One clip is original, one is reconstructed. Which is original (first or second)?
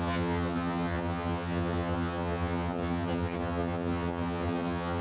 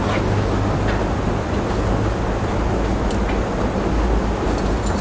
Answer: second